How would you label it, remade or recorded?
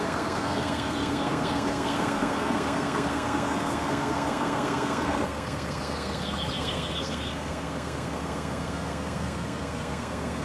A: remade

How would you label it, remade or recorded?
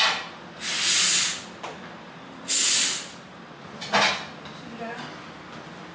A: recorded